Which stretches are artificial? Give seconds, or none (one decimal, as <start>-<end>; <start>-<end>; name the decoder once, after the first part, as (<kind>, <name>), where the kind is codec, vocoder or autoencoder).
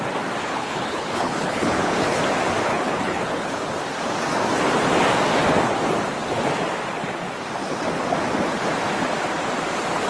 0.4-2.2 (codec, HILCodec); 2.7-3.6